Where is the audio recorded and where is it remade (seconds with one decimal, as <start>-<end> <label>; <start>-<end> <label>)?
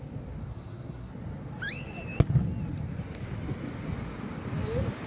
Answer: 0.0-0.5 recorded; 0.5-1.1 remade; 1.1-5.1 recorded